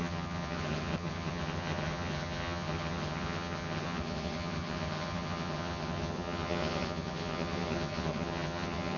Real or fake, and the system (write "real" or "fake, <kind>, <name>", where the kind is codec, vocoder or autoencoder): fake, vocoder, HiFi-GAN